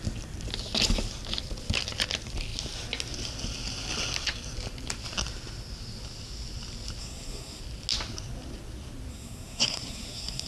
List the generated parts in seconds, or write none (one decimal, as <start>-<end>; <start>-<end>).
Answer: 7.0-7.6; 9.1-10.5